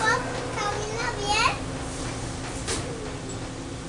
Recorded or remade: recorded